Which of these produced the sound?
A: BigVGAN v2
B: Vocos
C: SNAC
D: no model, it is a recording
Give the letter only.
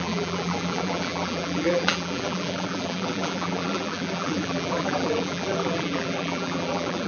A